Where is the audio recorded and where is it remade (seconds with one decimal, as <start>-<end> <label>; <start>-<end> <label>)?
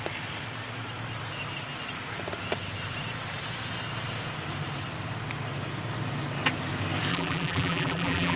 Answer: 0.0-7.1 recorded; 7.1-8.4 remade